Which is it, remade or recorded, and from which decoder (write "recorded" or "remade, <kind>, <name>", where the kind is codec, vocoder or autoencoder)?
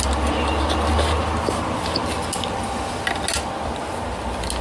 recorded